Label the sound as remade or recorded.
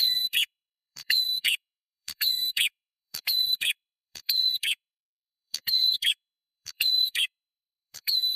remade